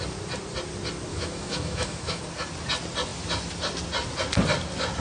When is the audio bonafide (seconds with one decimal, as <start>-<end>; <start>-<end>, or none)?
0.0-1.1; 2.2-5.0